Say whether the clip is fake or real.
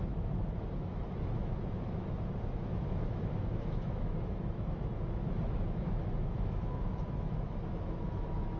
fake